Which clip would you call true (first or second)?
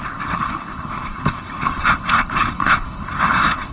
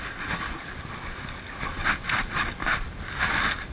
second